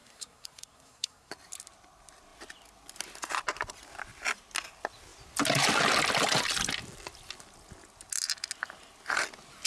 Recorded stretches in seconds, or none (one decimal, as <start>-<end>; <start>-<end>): 1.3-9.7

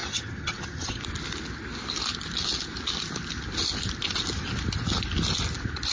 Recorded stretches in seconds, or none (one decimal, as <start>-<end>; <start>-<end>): 1.0-5.9

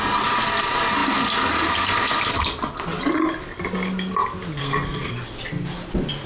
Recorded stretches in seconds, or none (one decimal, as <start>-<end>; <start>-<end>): 0.0-4.6; 5.1-6.3